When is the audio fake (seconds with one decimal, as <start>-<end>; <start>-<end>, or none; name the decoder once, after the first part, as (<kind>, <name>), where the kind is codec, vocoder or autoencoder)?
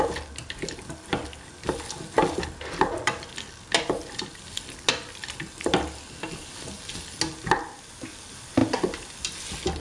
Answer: none